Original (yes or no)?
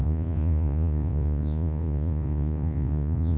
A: no